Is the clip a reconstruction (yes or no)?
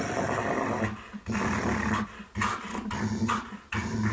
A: no